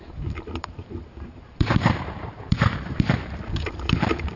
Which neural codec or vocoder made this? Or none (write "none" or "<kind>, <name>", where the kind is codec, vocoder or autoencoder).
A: vocoder, BigVGAN v2